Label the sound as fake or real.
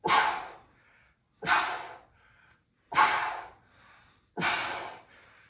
real